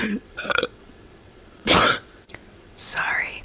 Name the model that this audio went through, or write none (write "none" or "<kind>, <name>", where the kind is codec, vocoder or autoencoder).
vocoder, WaveNeXt